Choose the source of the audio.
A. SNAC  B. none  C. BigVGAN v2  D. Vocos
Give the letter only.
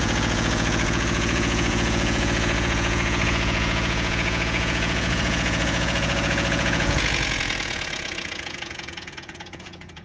D